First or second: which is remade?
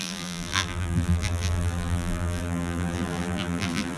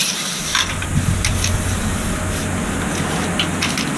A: first